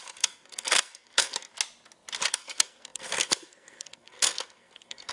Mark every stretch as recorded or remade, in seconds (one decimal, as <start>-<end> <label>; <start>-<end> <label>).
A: 0.0-1.5 remade; 1.5-2.3 recorded; 2.3-5.1 remade